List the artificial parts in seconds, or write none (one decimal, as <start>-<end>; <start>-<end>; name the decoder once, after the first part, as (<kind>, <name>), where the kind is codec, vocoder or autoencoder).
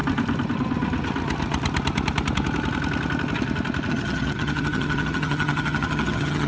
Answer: 3.9-6.5 (vocoder, HiFi-GAN)